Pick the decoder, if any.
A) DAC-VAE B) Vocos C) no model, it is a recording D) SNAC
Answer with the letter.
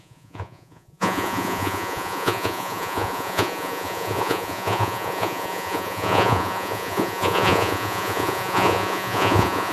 B